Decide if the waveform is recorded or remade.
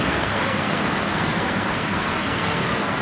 remade